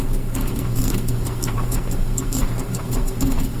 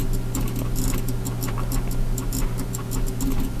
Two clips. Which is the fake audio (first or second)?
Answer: first